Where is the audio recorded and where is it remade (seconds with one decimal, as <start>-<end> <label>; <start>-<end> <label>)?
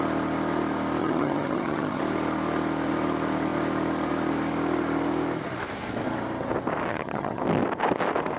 0.0-1.0 recorded; 1.0-2.0 remade; 2.0-6.9 recorded; 6.9-7.4 remade; 7.4-8.4 recorded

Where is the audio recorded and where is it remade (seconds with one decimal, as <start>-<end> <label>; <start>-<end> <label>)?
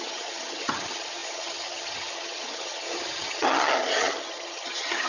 0.0-5.1 remade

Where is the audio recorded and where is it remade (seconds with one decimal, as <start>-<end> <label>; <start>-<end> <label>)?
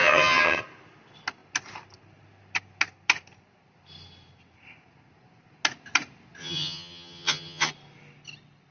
0.0-0.6 remade; 0.6-6.4 recorded; 6.4-7.7 remade; 7.7-8.7 recorded